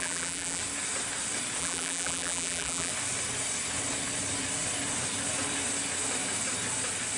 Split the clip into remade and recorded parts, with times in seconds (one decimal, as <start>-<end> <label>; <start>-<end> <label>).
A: 0.0-0.6 remade; 0.6-1.6 recorded; 1.6-2.9 remade; 2.9-7.2 recorded